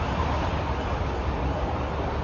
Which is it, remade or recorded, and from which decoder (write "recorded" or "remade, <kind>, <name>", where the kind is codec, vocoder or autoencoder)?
recorded